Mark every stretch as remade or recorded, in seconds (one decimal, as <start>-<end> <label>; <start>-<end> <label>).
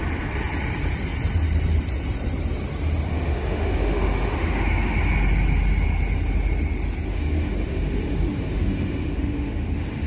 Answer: 0.0-3.1 recorded; 3.1-5.0 remade; 5.0-7.1 recorded; 7.1-10.1 remade